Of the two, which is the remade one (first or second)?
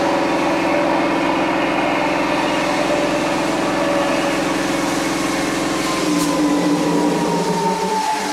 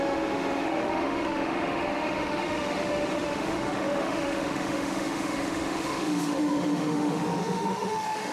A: second